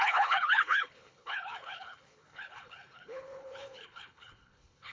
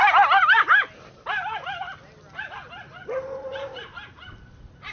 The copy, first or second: first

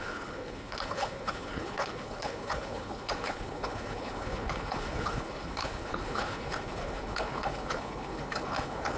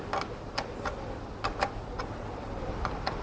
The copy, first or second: first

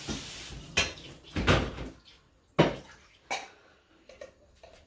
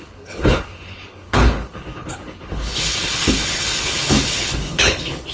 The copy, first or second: second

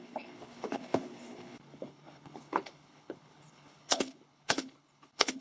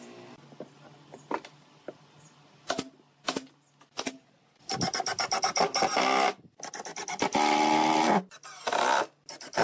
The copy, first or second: first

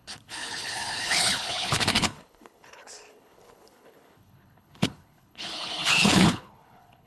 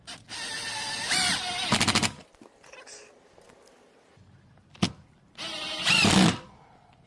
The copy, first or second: first